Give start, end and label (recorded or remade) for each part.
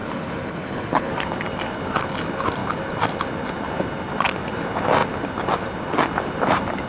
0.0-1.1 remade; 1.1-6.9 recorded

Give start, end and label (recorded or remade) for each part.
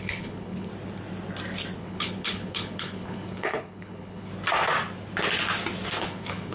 0.0-0.7 remade; 0.7-1.8 recorded; 1.8-4.3 remade; 4.3-6.0 recorded; 6.0-6.5 remade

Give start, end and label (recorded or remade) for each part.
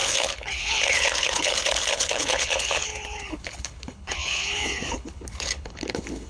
0.0-6.3 remade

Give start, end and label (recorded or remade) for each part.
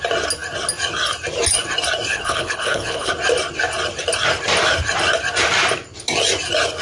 0.0-2.1 recorded; 2.1-3.1 remade; 3.1-6.8 recorded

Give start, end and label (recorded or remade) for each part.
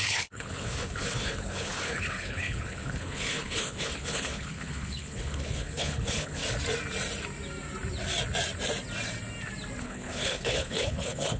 0.0-6.4 remade; 6.4-9.8 recorded; 9.8-11.4 remade